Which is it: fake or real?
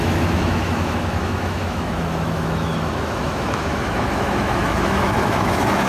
fake